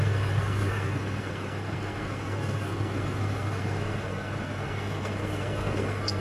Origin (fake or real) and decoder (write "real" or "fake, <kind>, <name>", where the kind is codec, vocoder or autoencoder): fake, codec, SNAC